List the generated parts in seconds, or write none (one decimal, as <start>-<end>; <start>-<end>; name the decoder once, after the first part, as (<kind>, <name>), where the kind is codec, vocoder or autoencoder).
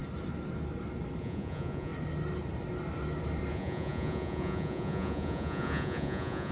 1.2-1.9 (vocoder, Vocos); 3.5-6.5